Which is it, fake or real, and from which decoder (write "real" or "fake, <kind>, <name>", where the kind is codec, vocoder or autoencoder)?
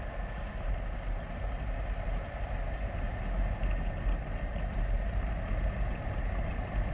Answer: real